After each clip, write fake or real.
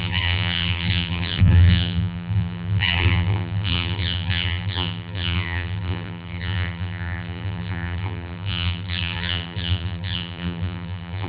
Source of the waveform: fake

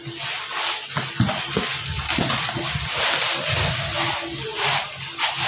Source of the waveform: fake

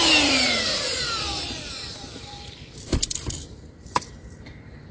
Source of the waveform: fake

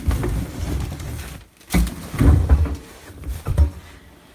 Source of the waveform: fake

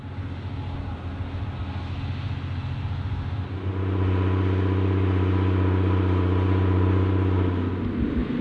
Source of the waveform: real